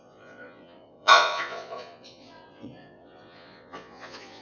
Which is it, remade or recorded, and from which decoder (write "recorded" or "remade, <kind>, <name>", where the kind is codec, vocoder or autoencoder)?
remade, vocoder, Vocos